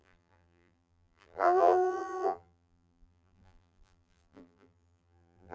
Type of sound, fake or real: fake